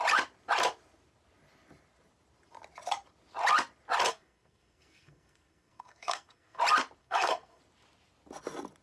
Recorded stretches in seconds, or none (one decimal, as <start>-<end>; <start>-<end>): 0.0-4.1; 6.6-7.0; 7.6-8.8